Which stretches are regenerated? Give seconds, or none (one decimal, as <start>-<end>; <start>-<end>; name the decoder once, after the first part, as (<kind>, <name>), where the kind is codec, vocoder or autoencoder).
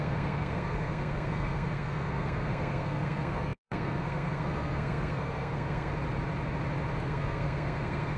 0.0-5.9 (codec, SNAC); 7.0-8.2